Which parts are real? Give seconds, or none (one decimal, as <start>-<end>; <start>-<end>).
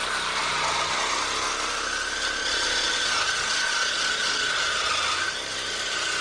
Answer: 0.0-2.4; 4.9-6.2